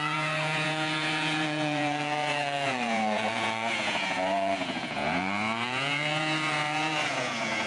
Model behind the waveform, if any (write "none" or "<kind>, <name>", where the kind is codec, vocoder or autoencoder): vocoder, Vocos